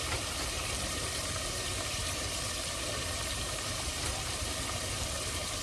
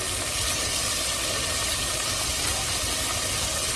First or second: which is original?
second